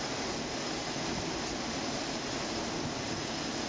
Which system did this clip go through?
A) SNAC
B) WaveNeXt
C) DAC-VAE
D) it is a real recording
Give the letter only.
D